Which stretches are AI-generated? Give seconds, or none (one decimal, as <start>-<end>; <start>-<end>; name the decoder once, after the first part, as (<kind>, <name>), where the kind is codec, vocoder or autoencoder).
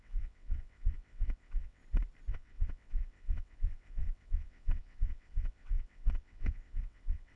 0.0-1.8 (vocoder, WaveNeXt); 2.3-7.4